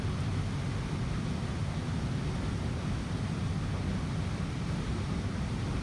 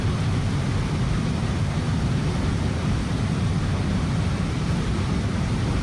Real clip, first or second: first